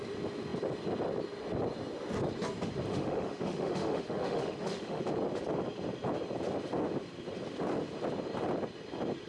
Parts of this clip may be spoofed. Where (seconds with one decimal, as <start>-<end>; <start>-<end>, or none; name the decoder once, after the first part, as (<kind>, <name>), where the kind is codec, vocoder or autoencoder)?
2.9-5.0 (autoencoder, DAC-VAE)